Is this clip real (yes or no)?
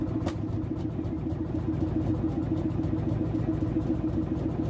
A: yes